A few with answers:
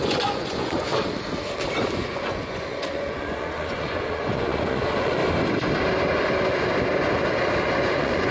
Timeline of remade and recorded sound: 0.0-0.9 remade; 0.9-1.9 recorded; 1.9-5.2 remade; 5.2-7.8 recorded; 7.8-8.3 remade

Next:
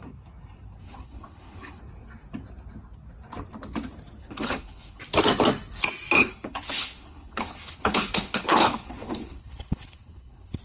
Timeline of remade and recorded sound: 0.0-0.8 recorded; 0.8-1.8 remade; 1.8-4.2 recorded; 4.2-5.0 remade; 5.0-6.2 recorded; 6.2-10.6 remade

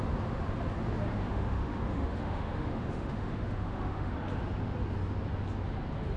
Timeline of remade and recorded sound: 0.0-1.1 recorded; 1.1-4.1 remade; 4.1-6.2 recorded

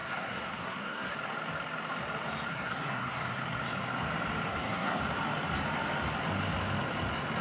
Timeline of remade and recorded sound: 0.0-1.1 remade; 1.1-2.5 recorded; 2.5-3.4 remade; 3.4-4.5 recorded; 4.5-5.0 remade; 5.0-7.4 recorded

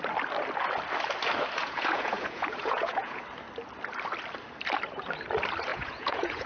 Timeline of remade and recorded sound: 0.0-1.6 recorded; 1.6-3.2 remade; 3.2-5.7 recorded; 5.7-6.5 remade

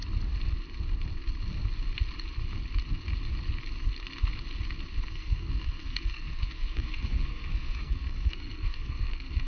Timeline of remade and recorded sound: 0.0-5.1 recorded; 5.1-9.5 remade